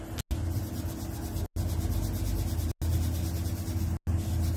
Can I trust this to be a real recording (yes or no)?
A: yes